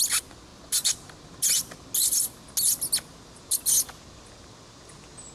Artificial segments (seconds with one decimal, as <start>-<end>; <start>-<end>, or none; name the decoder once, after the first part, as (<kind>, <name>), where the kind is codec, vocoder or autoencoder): none